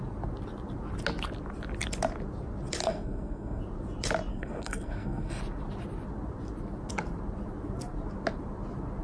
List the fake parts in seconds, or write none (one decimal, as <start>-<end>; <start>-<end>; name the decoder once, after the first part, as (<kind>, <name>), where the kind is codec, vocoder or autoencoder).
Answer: 2.8-3.6 (codec, SNAC); 4.3-5.4